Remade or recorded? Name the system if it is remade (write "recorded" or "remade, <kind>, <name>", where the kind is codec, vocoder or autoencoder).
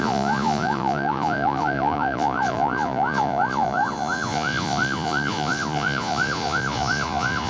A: remade, vocoder, Vocos